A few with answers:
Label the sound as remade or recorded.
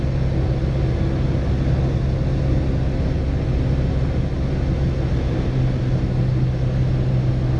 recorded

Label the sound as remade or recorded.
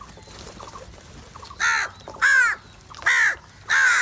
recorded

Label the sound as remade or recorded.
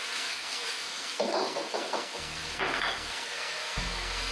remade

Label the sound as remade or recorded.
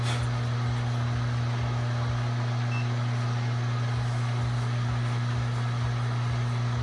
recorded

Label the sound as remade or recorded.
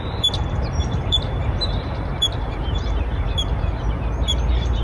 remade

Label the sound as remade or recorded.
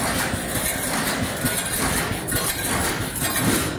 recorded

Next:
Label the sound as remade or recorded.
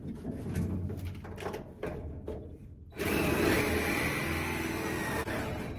recorded